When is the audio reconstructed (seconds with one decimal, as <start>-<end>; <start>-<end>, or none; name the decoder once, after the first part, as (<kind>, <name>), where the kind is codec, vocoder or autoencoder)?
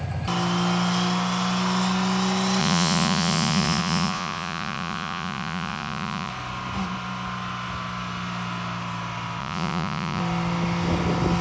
2.6-6.3 (vocoder, Vocos); 9.4-10.2